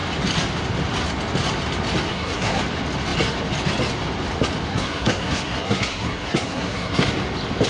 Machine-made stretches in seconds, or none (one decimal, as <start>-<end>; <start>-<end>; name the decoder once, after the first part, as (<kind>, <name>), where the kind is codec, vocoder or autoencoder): 2.1-2.6 (codec, SNAC); 4.7-7.1

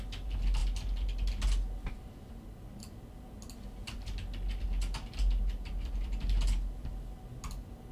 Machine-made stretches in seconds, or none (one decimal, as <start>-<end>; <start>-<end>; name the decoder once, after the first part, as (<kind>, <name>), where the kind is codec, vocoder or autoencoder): none

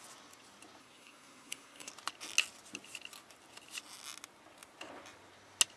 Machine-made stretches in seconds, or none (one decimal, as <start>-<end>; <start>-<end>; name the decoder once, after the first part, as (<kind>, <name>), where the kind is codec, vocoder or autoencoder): 0.8-1.9 (codec, SNAC)

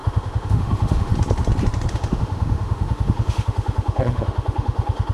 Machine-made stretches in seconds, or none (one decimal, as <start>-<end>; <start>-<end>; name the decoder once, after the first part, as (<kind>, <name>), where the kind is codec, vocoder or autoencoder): 0.0-1.1 (autoencoder, DAC-VAE); 1.9-5.1

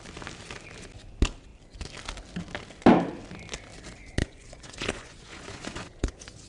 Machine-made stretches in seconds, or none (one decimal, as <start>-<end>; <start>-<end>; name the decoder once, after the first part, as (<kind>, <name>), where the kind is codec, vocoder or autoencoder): 4.2-6.1 (vocoder, Vocos)

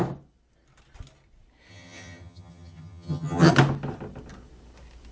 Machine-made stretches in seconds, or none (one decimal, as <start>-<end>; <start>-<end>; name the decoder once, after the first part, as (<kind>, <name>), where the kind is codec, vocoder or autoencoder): 1.7-3.5 (vocoder, HiFi-GAN)

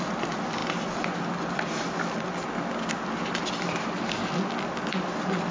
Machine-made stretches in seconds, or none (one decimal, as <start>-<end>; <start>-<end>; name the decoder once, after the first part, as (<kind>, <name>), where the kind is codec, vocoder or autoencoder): none

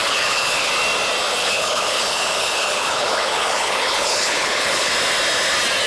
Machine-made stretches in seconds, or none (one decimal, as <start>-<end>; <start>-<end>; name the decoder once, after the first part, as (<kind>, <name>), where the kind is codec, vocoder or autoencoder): 0.0-0.7 (codec, HILCodec); 1.4-4.9